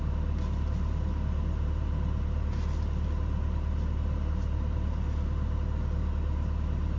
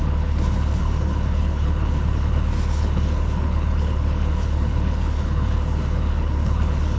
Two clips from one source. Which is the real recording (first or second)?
first